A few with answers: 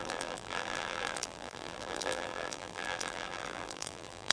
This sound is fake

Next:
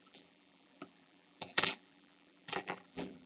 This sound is fake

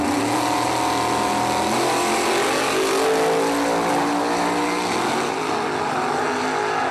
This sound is real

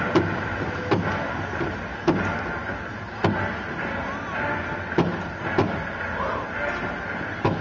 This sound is real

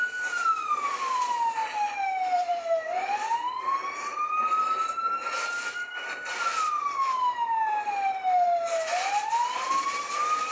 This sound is fake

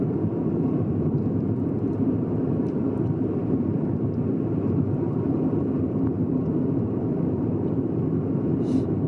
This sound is fake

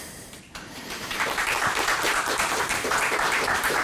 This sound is fake